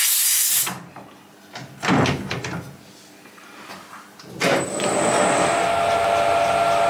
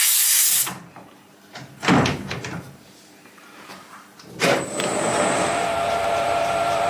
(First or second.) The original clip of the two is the first